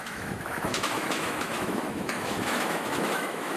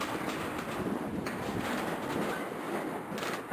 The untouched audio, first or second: second